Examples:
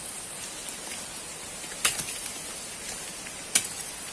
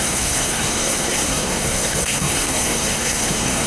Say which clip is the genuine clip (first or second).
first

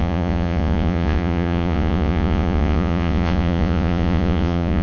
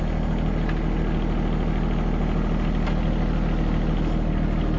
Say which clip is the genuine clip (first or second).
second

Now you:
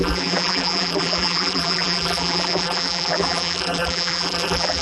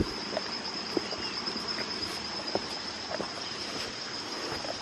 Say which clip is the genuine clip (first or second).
second